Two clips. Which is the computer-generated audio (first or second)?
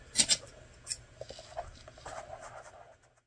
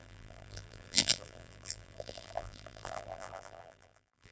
second